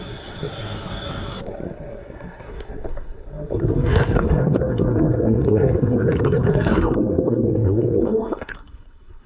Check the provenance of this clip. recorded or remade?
remade